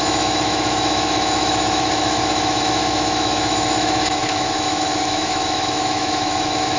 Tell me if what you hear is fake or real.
fake